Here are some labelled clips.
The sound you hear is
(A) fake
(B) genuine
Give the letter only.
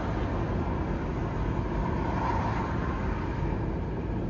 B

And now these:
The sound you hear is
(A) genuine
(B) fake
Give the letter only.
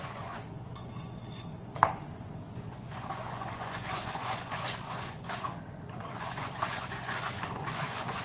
B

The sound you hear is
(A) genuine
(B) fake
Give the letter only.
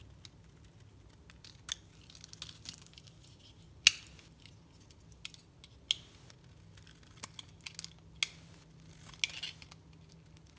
A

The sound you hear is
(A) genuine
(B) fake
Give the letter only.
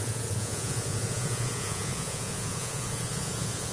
B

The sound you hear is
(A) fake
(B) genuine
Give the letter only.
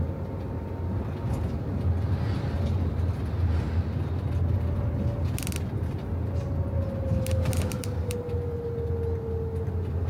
B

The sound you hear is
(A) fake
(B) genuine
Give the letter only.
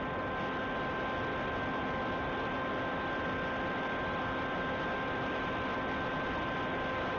B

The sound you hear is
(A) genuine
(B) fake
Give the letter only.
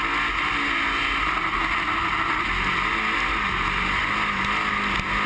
A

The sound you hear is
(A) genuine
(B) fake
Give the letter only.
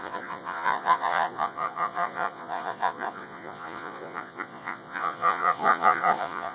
B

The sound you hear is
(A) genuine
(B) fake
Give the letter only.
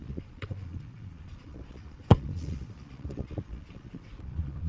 B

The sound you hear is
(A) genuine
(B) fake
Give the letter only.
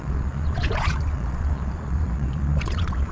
B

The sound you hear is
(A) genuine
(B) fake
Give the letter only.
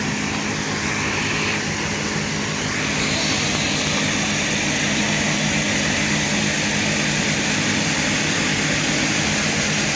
A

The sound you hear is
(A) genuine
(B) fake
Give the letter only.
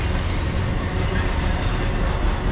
A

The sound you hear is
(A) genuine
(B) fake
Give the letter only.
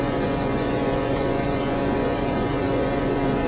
B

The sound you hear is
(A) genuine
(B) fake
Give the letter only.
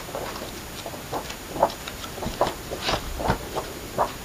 A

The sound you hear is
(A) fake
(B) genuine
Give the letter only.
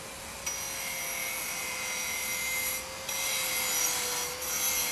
B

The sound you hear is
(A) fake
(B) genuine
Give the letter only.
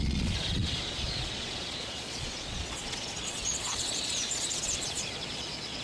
A